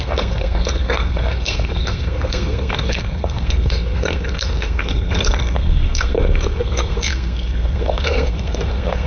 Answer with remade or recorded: remade